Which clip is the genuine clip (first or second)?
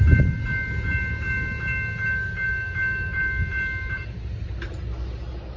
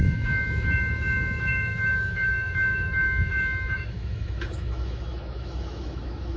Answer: first